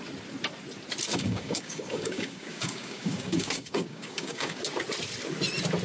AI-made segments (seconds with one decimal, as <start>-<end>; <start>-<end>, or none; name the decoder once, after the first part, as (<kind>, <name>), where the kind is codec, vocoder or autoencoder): 1.1-4.6 (codec, DAC)